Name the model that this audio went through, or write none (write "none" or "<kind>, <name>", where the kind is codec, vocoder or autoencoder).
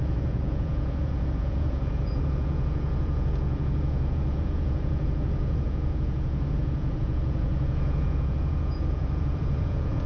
vocoder, Vocos